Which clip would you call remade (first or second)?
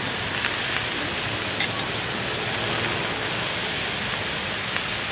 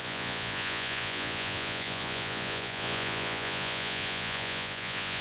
second